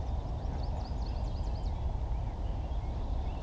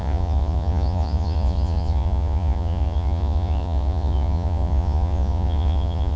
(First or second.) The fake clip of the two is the second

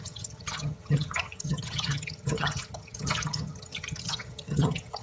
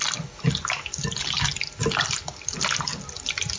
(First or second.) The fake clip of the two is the first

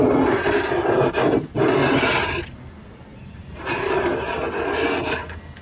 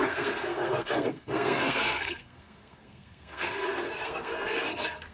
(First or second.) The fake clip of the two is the second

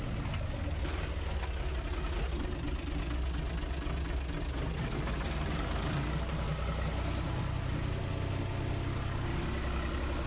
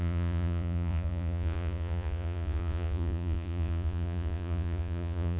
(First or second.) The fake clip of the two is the second